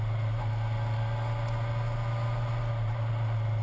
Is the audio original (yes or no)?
yes